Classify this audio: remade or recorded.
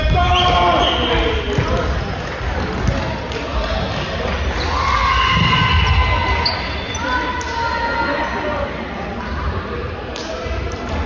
recorded